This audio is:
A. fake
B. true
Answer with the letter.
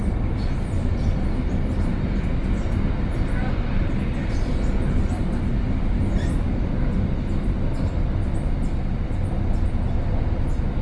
B